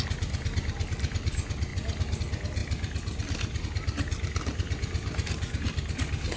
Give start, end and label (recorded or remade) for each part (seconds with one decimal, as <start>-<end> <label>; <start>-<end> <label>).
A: 0.0-6.4 recorded